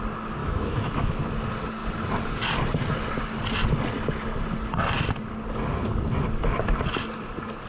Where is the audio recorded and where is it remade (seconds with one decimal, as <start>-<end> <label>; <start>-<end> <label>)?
0.0-0.4 recorded; 0.4-1.2 remade; 1.2-7.7 recorded